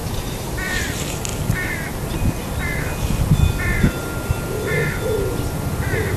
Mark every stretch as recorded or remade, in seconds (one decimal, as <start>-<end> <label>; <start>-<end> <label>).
0.0-6.2 recorded